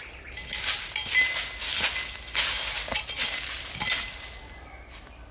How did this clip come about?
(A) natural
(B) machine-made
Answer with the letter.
A